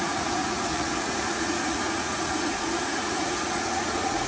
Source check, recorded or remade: remade